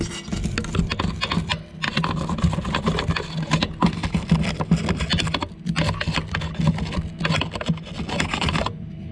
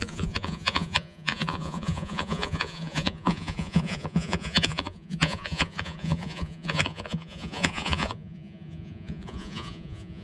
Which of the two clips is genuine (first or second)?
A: first